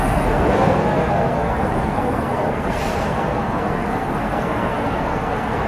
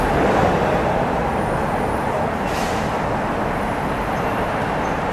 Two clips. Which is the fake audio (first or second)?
first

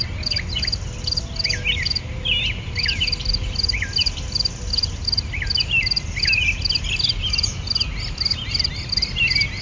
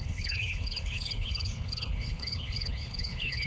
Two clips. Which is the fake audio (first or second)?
second